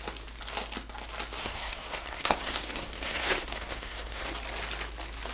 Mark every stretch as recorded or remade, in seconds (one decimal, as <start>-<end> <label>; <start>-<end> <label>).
0.0-1.4 recorded; 1.4-4.2 remade; 4.2-5.3 recorded